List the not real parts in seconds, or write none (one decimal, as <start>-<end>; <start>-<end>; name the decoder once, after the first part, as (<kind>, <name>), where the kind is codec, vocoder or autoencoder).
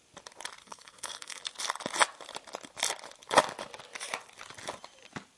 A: 0.6-1.4 (codec, SNAC)